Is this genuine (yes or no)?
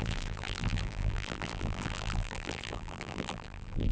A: no